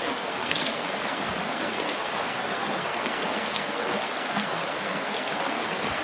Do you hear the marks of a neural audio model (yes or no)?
yes